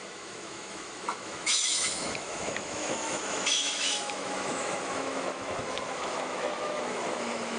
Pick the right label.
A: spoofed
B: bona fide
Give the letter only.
A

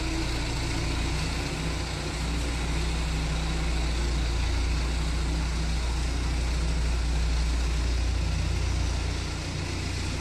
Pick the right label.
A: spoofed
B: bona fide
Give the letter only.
B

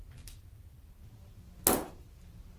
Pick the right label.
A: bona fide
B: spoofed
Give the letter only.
A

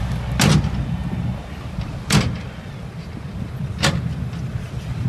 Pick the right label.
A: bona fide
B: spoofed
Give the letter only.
A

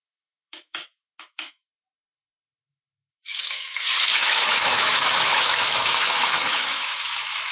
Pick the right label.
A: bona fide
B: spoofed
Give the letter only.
B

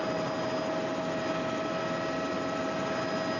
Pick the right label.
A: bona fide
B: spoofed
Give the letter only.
A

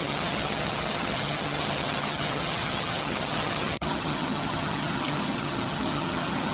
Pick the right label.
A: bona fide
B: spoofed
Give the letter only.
B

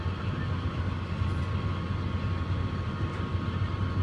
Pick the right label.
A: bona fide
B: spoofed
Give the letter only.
A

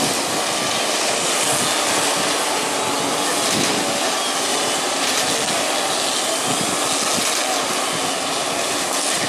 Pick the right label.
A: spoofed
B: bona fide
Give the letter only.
B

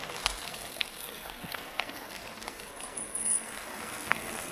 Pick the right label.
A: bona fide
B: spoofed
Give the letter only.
B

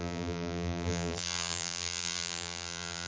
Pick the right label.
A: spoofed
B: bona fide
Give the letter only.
A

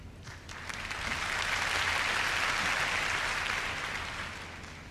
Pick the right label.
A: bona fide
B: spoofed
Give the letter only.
A